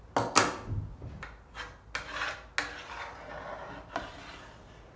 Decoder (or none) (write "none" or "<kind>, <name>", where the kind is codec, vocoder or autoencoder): none